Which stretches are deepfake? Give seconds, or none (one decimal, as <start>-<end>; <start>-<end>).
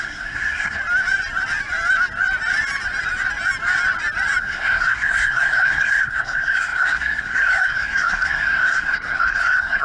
0.0-0.8; 4.4-9.8